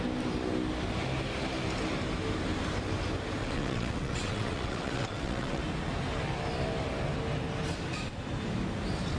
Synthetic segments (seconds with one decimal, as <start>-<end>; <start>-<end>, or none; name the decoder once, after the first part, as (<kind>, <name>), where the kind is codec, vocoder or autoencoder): 3.4-5.6 (vocoder, WaveNeXt)

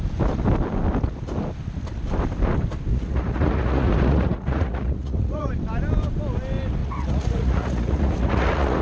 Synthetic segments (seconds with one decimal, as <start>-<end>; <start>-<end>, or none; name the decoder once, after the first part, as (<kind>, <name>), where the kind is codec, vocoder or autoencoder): 2.9-5.5 (vocoder, Vocos); 6.8-8.8

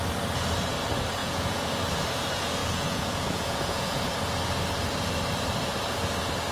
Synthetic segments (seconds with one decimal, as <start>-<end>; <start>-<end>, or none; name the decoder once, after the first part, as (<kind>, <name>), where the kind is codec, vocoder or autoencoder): 1.2-1.8 (vocoder, Vocos); 2.6-4.0

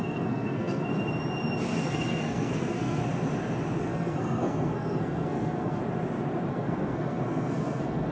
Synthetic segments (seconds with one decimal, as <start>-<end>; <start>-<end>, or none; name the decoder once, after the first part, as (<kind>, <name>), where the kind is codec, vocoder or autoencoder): 0.0-0.9 (codec, SNAC); 1.8-3.0; 3.8-5.8; 6.5-8.1

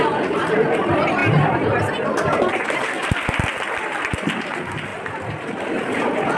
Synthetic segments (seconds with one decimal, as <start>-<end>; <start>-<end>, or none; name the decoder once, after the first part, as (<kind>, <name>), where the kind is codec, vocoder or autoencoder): none